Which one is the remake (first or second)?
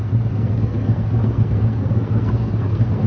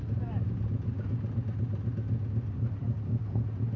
first